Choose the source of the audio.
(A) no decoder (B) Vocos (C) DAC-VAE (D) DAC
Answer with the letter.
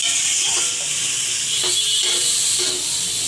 A